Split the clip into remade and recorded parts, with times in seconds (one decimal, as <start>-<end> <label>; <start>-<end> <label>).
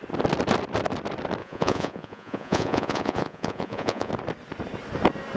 0.0-1.4 recorded; 1.4-4.1 remade; 4.1-5.4 recorded